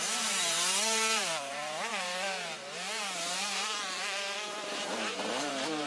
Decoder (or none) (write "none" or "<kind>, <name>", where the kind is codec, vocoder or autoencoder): vocoder, BigVGAN v2